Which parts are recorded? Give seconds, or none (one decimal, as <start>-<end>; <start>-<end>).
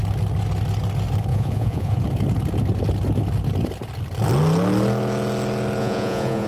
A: 0.0-1.3; 2.0-5.8